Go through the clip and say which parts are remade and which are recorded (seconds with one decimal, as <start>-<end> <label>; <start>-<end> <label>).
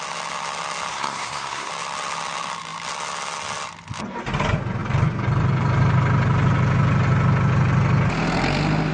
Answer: 0.0-0.9 recorded; 0.9-1.7 remade; 1.7-8.9 recorded